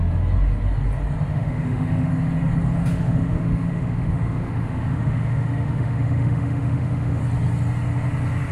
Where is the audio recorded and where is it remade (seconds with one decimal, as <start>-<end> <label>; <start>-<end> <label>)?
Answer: 0.0-1.3 recorded; 1.3-2.1 remade; 2.1-2.9 recorded; 2.9-7.2 remade; 7.2-8.5 recorded